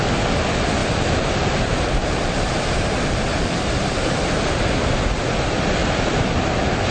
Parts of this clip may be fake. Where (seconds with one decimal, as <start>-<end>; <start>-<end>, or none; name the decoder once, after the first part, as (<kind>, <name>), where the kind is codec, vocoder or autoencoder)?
0.8-2.8 (vocoder, BigVGAN v2); 3.3-4.2; 5.8-6.4